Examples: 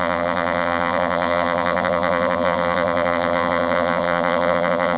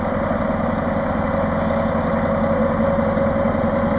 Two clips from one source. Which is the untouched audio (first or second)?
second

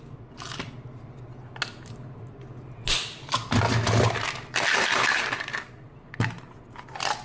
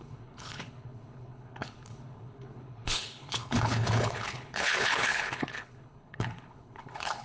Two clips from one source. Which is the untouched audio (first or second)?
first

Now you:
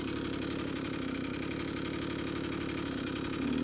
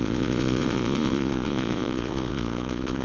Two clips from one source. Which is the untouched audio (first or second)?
first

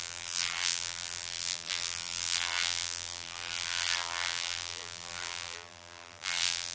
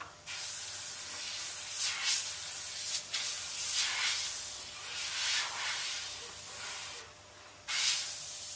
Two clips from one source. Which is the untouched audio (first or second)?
second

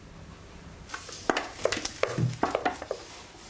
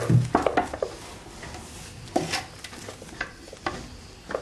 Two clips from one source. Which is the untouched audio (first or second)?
second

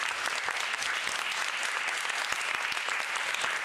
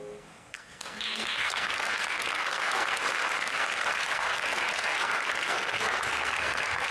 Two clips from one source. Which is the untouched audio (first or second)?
first